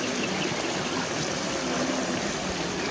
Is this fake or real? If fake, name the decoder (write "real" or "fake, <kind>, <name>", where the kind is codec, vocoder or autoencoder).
real